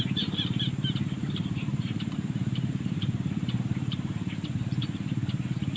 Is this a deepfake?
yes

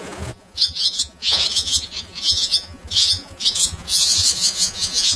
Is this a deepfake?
yes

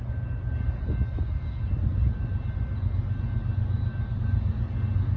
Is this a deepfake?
no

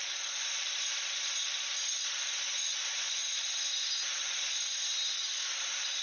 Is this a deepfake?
no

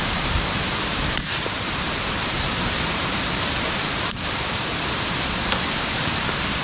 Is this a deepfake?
yes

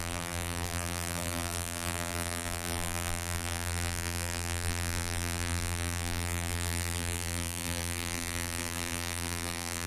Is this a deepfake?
yes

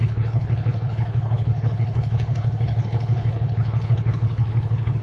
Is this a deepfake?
yes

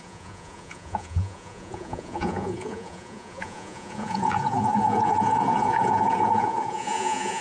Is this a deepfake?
yes